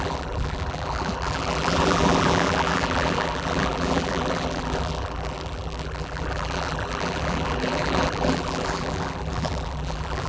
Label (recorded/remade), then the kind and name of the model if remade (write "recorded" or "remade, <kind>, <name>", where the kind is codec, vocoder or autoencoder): remade, vocoder, BigVGAN v2